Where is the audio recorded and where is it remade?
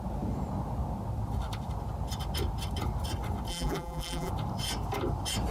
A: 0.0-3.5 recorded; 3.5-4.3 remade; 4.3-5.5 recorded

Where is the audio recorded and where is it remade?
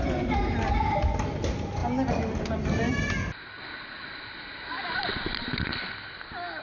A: 0.0-6.6 recorded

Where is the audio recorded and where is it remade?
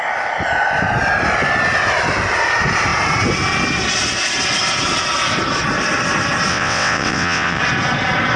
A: 0.0-6.5 recorded; 6.5-7.6 remade; 7.6-8.4 recorded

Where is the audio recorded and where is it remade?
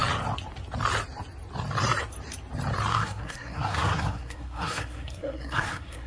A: 0.0-2.9 recorded; 2.9-6.1 remade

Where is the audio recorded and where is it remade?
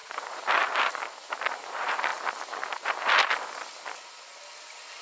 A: 0.0-5.0 recorded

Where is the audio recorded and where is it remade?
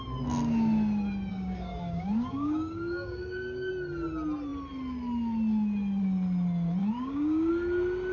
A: 0.0-1.3 recorded; 1.3-3.7 remade; 3.7-6.8 recorded; 6.8-7.5 remade; 7.5-8.1 recorded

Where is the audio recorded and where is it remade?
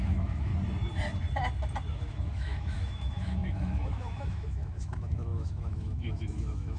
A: 0.0-0.5 remade; 0.5-1.9 recorded; 1.9-6.8 remade